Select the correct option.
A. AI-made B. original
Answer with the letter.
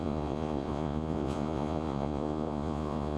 A